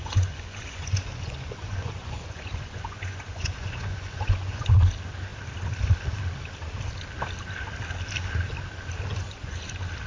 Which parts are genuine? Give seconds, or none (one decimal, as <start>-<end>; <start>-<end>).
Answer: 4.7-9.1; 9.6-10.1